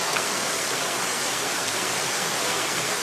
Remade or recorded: remade